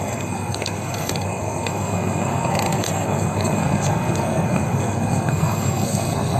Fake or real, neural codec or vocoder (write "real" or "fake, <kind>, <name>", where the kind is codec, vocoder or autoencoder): fake, codec, SNAC